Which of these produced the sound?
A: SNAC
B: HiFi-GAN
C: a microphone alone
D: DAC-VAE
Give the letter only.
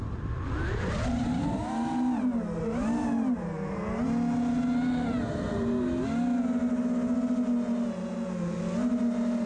C